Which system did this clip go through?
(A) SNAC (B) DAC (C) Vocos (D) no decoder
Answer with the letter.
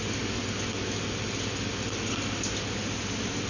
D